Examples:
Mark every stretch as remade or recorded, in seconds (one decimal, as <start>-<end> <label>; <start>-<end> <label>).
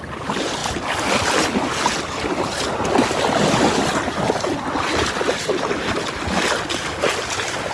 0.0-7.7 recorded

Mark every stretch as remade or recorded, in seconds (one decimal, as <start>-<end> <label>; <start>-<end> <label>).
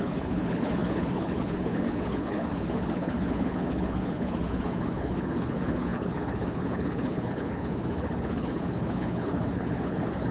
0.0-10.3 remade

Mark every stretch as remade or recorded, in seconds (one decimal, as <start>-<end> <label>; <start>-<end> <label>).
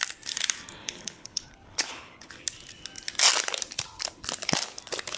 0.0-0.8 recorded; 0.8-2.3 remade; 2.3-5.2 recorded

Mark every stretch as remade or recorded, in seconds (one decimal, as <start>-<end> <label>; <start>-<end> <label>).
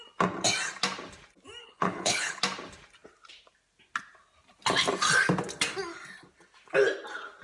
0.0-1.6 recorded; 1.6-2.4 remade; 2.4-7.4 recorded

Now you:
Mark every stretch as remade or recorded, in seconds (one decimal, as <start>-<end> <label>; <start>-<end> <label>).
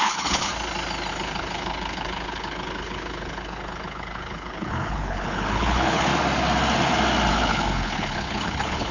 0.0-0.5 remade; 0.5-1.1 recorded; 1.1-6.1 remade; 6.1-7.3 recorded; 7.3-8.9 remade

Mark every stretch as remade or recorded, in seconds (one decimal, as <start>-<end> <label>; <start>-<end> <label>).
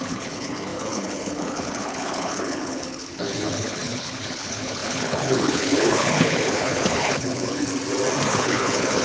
0.0-7.7 remade; 7.7-8.3 recorded; 8.3-9.0 remade